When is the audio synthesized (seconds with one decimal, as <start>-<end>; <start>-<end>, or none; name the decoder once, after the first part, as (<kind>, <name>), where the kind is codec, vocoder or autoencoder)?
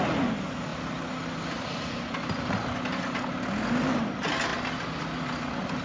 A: none